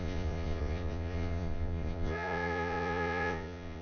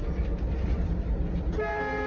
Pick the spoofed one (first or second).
first